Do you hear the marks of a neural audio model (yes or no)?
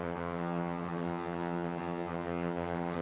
yes